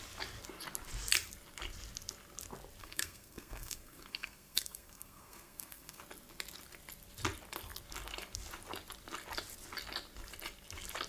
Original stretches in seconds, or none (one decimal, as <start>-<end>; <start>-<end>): 0.0-2.8; 6.0-11.1